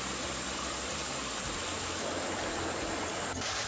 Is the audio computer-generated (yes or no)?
yes